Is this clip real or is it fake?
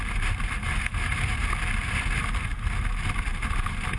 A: fake